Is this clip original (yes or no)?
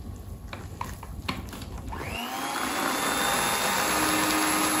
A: yes